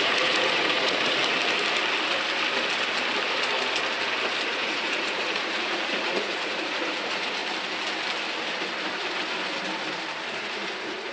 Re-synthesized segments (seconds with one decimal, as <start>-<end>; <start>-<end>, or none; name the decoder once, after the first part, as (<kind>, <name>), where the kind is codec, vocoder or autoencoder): 0.0-1.2 (vocoder, Vocos); 4.5-7.4; 10.3-11.1

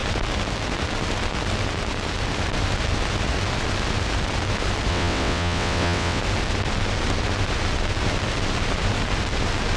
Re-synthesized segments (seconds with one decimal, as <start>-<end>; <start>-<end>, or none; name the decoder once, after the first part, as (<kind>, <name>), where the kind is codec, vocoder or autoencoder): 4.9-6.2 (vocoder, WaveNeXt)